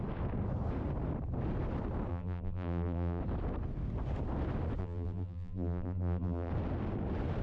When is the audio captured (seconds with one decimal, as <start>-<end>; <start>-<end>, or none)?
0.0-2.1; 3.2-4.8; 6.5-7.4